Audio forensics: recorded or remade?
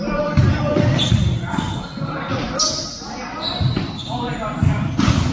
recorded